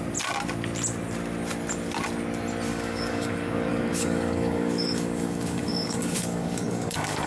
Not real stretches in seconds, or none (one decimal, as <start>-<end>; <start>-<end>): 2.7-7.3